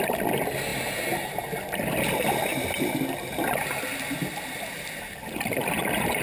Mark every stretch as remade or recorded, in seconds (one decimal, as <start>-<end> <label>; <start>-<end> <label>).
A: 0.0-6.2 recorded